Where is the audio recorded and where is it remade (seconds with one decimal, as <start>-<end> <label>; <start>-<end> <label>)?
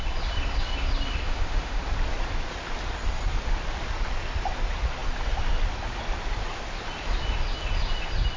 0.0-1.2 recorded; 1.2-1.8 remade; 1.8-8.4 recorded